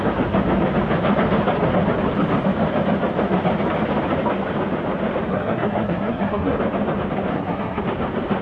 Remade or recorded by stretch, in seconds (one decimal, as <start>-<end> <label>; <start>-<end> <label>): 0.0-5.3 recorded; 5.3-6.6 remade; 6.6-7.3 recorded; 7.3-7.8 remade; 7.8-8.4 recorded